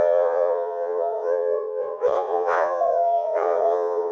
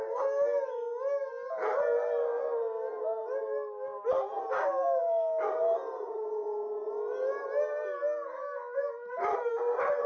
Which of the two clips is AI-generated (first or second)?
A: first